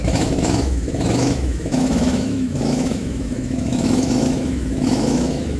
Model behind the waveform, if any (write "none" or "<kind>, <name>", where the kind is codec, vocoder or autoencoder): autoencoder, DAC-VAE